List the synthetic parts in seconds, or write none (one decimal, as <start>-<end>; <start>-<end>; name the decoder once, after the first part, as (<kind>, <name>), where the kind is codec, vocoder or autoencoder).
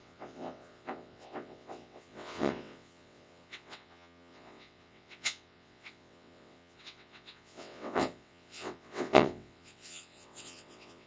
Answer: 0.0-11.1 (vocoder, WaveNeXt)